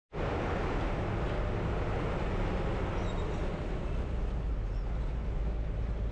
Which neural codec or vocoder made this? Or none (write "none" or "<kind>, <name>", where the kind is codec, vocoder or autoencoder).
none